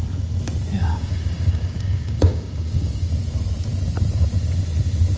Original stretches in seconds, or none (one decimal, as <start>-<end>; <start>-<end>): 0.0-0.8; 3.1-5.2